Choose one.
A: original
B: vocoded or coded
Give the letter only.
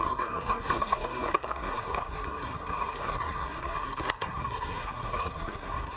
B